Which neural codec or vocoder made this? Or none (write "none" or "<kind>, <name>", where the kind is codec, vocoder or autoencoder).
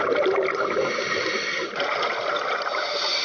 none